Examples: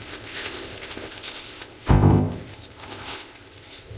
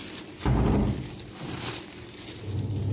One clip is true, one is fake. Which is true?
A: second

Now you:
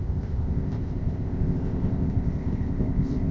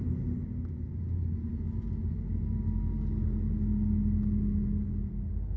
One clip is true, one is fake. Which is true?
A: second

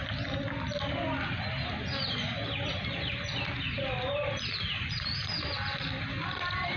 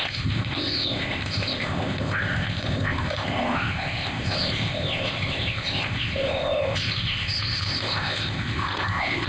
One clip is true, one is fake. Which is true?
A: first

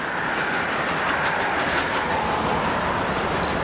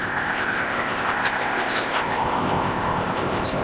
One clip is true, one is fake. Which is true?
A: first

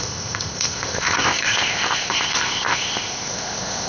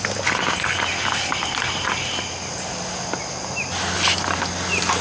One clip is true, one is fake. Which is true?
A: second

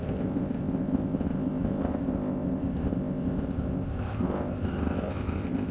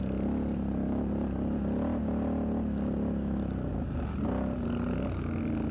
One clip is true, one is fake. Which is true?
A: second